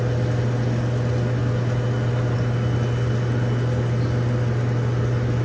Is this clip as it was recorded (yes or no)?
yes